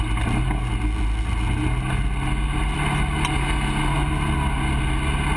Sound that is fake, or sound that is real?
real